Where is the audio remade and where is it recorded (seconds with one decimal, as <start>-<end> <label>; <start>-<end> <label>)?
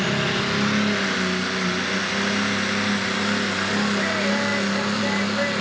0.0-5.6 recorded